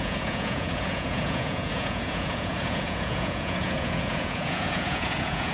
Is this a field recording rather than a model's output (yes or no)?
no